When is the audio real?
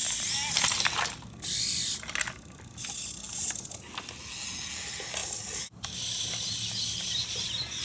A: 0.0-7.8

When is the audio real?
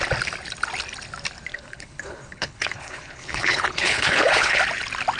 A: 0.0-1.5; 4.6-5.2